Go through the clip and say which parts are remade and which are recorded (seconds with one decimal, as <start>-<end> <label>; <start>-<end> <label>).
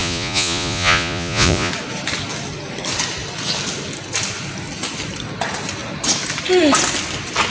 0.0-1.7 remade; 1.7-7.5 recorded